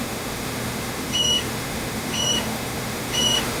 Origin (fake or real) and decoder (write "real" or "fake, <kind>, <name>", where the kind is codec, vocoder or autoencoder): fake, autoencoder, DAC-VAE